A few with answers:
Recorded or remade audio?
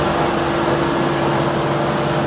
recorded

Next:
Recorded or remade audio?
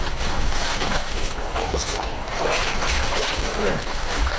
remade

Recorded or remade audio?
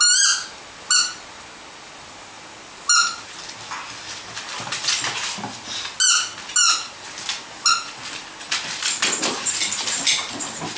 recorded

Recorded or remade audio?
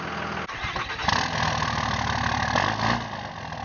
recorded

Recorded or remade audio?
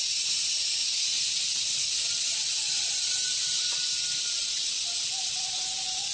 recorded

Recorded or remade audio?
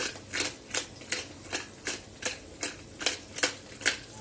recorded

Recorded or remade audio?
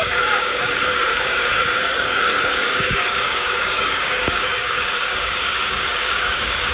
remade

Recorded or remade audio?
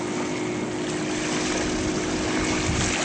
recorded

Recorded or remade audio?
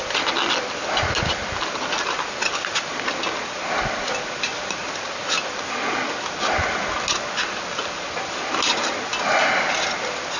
recorded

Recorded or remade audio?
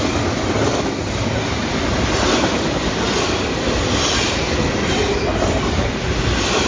recorded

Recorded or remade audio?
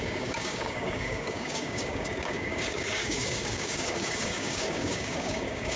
remade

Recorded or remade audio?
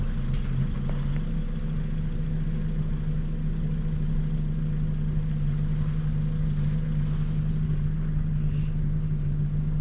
recorded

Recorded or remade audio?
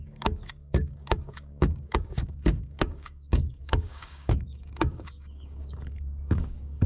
remade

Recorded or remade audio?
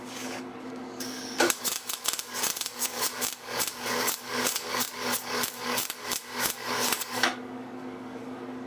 remade